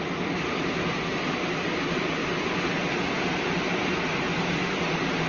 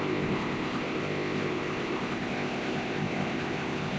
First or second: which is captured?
first